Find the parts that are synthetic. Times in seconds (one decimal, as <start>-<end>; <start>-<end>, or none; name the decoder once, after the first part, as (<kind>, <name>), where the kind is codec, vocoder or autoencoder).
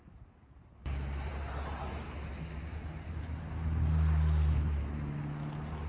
none